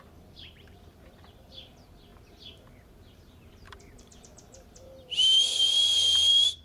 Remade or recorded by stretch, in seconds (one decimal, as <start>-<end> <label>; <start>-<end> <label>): 0.0-6.6 remade